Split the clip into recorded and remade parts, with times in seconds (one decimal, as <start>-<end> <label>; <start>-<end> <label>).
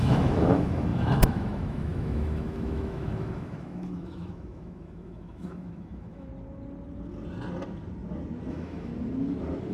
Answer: 0.0-6.3 remade; 6.3-8.5 recorded; 8.5-8.9 remade; 8.9-9.7 recorded